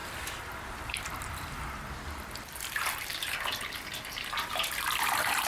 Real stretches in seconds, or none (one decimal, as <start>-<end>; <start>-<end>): 3.3-5.5